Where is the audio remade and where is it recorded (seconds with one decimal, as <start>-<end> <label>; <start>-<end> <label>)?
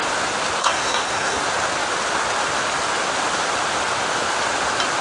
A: 0.0-0.6 recorded; 0.6-1.4 remade; 1.4-5.0 recorded